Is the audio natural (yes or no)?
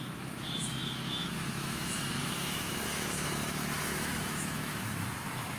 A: no